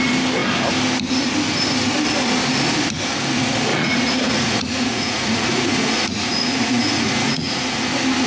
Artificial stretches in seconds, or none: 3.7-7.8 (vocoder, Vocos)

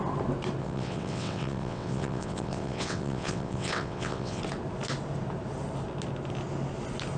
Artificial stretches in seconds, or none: 0.6-4.4 (vocoder, WaveNeXt)